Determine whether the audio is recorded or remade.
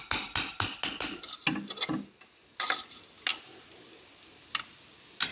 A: recorded